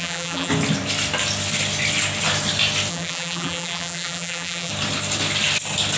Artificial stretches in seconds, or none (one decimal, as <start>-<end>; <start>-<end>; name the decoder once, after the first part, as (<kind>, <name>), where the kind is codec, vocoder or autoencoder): 0.0-0.5 (vocoder, BigVGAN v2); 2.9-4.7